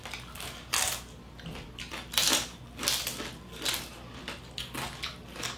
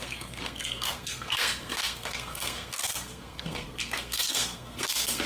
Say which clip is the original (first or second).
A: first